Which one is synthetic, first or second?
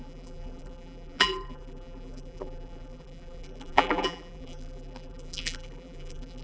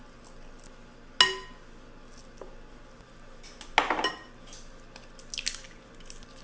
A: first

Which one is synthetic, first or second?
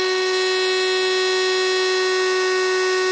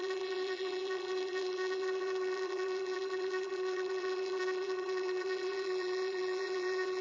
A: second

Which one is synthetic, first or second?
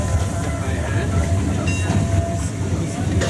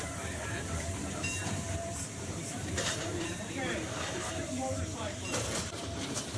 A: second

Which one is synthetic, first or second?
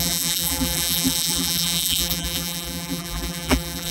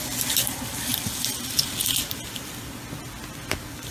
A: first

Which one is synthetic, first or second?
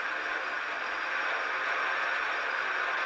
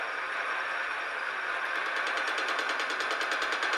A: second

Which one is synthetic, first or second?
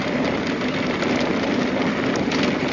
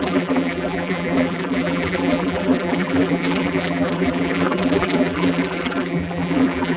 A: second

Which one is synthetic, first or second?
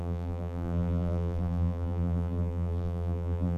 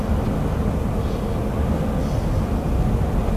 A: first